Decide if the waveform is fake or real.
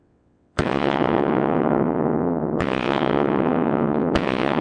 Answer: fake